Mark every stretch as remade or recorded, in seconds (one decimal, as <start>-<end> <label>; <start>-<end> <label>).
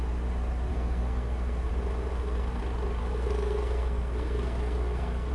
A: 0.0-0.7 recorded; 0.7-1.7 remade; 1.7-2.1 recorded; 2.1-2.6 remade; 2.6-3.0 recorded; 3.0-5.3 remade